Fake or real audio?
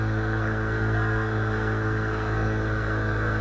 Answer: fake